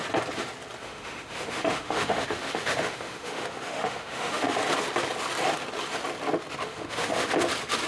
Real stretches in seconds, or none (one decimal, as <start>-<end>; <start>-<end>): 0.0-0.8; 4.6-6.6; 7.3-7.9